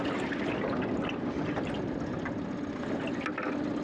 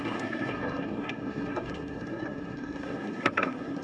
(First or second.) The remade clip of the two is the second